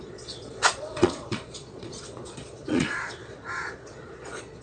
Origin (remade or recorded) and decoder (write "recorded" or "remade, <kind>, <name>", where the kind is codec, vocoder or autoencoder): remade, vocoder, Vocos